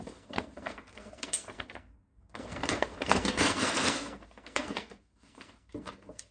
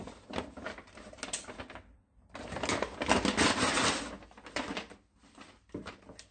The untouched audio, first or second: second